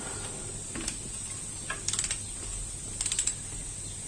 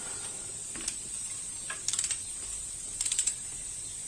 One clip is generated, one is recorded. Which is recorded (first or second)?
first